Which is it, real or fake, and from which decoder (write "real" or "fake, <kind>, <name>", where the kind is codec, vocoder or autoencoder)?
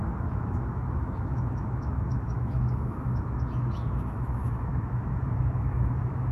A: fake, autoencoder, DAC-VAE